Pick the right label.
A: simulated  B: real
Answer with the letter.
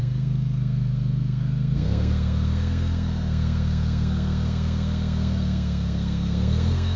A